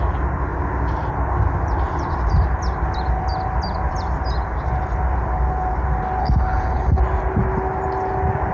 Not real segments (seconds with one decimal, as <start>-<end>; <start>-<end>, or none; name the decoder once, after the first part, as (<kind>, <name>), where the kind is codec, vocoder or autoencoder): 6.2-7.0 (codec, HILCodec)

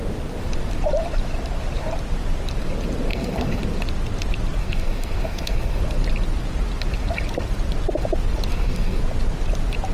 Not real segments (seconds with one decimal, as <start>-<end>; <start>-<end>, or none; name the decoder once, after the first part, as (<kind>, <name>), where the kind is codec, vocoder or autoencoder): 3.1-3.6 (codec, SNAC); 4.6-5.8; 8.5-9.0

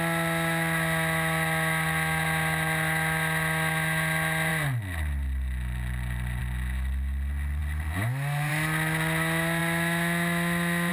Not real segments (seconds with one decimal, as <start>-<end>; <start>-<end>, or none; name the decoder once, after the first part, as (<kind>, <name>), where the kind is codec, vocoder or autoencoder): none

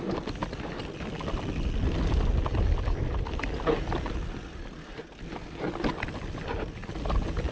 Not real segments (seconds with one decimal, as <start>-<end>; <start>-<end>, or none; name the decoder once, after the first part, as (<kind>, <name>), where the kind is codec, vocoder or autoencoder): none

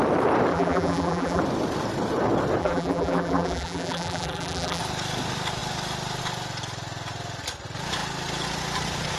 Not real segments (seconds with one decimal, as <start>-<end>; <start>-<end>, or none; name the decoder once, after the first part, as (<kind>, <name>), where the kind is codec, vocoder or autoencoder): 0.5-1.4 (vocoder, BigVGAN v2); 2.6-4.8

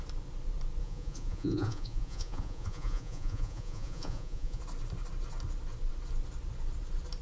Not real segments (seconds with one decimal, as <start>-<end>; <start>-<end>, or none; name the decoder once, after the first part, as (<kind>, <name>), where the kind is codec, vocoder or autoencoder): 0.8-4.6 (vocoder, Vocos)

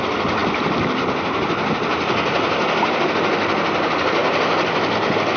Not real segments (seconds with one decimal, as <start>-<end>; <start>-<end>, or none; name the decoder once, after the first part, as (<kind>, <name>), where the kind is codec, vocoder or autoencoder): none